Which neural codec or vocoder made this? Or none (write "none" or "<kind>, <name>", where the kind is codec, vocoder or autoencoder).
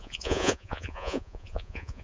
vocoder, Vocos